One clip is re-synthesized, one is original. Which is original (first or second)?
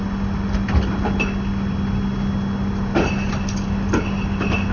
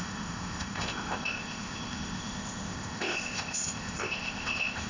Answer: first